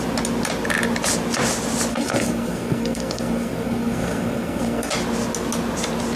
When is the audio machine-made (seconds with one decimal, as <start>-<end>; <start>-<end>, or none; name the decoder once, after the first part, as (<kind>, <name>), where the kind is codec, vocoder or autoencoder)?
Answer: 1.9-4.9 (codec, SNAC)